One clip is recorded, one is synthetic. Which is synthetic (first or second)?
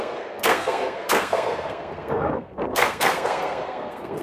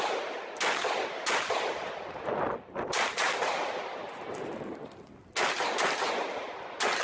first